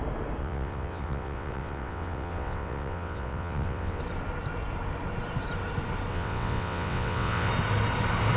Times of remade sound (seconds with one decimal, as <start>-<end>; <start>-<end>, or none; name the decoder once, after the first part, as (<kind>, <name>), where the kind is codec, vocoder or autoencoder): 0.4-4.0 (vocoder, WaveNeXt); 6.1-7.5